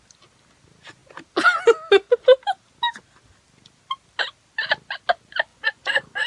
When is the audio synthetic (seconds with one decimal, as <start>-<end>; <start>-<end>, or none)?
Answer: 5.5-6.3